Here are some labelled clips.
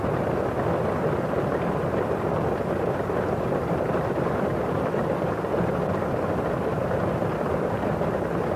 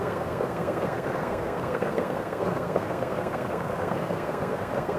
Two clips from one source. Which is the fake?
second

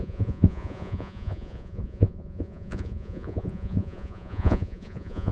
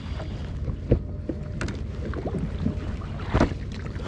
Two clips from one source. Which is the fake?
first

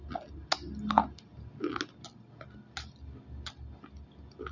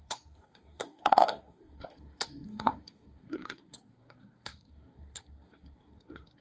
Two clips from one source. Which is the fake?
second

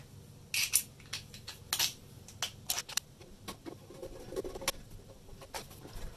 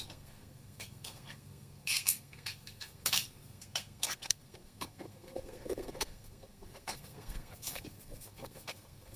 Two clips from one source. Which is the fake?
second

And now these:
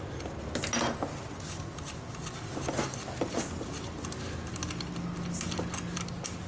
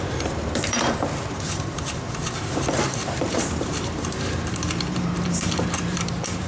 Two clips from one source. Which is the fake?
second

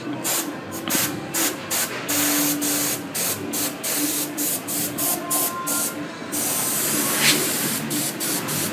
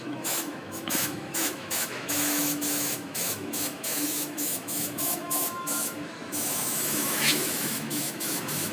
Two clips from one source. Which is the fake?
second